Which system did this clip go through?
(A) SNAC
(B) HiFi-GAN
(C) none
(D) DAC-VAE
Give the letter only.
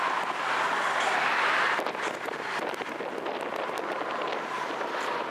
C